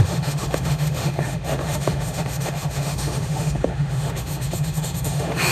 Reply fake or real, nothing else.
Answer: fake